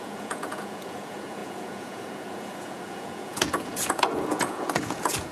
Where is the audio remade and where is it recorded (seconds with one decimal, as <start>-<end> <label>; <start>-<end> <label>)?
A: 0.0-5.3 remade